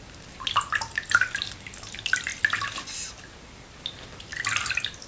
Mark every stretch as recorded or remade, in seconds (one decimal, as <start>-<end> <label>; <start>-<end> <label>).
0.0-5.1 recorded